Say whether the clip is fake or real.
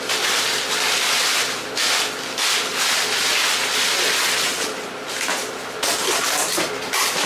real